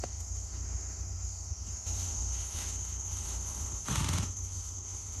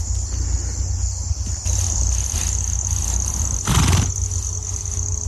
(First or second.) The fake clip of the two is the first